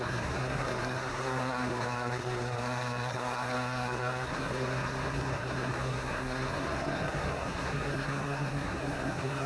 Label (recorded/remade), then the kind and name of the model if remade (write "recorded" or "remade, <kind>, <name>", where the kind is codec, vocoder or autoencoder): remade, codec, SNAC